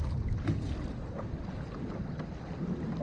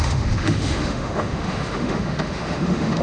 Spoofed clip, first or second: second